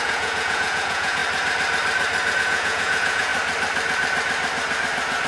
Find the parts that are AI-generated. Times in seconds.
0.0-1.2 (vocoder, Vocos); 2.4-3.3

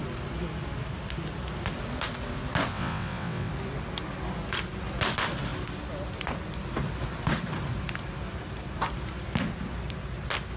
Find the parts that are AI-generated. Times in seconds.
2.7-3.5 (vocoder, WaveNeXt)